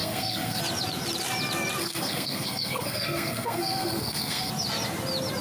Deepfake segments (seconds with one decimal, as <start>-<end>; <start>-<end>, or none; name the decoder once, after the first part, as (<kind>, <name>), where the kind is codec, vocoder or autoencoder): 0.0-0.6 (codec, SNAC); 1.8-4.5